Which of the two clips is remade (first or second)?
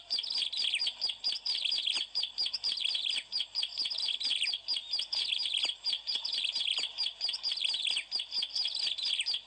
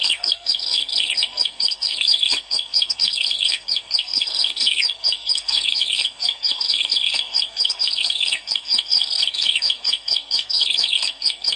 second